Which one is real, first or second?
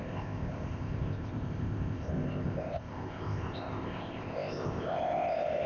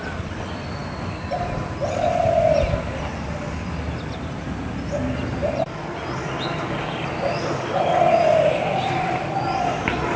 second